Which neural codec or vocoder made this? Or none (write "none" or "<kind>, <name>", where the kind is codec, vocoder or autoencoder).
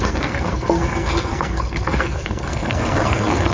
codec, SNAC